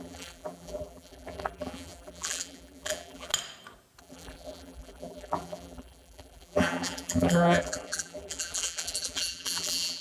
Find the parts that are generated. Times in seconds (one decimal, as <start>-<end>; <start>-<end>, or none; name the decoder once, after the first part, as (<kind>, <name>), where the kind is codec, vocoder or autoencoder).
0.0-3.3 (vocoder, BigVGAN v2); 4.0-10.0